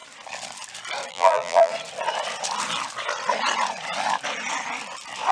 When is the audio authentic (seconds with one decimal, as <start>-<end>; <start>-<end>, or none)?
0.0-1.1; 1.7-5.3